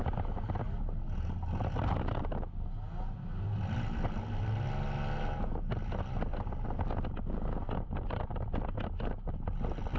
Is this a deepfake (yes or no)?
no